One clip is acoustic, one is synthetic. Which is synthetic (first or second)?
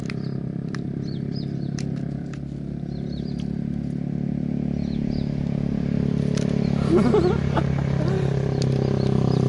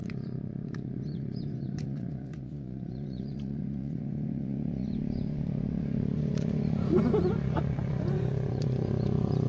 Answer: second